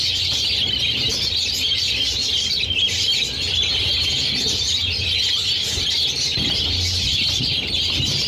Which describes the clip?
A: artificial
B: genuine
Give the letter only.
B